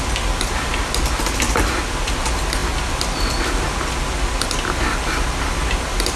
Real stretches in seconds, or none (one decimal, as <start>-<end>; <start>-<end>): 0.0-6.2